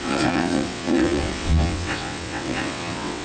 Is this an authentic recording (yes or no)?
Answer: no